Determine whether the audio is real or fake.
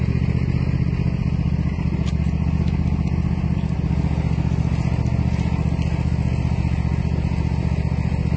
real